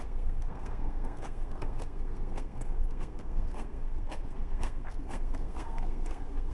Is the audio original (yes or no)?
no